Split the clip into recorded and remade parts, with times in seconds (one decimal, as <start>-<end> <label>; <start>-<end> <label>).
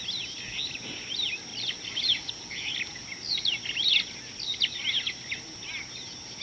0.0-1.5 recorded; 1.5-3.1 remade; 3.1-6.4 recorded